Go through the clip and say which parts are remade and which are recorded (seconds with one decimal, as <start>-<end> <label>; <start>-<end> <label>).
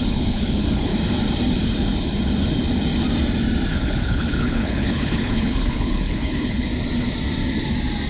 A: 0.0-0.9 remade; 0.9-3.7 recorded; 3.7-6.7 remade; 6.7-8.1 recorded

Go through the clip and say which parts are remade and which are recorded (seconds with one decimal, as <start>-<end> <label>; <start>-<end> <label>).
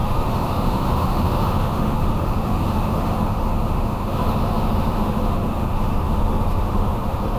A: 0.0-7.4 remade